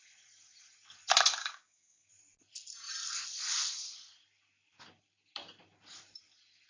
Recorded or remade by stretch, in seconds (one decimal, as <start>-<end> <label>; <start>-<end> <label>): 0.0-1.4 recorded; 1.4-2.1 remade; 2.1-6.7 recorded